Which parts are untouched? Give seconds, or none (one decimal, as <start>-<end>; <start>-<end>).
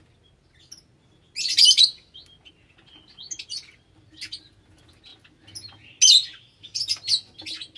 0.0-7.8